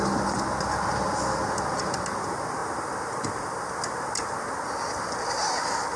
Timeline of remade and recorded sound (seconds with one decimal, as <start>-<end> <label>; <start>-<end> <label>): 0.0-6.0 recorded